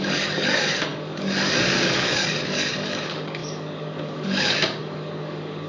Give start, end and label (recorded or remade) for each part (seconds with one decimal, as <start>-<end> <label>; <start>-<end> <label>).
0.0-5.7 remade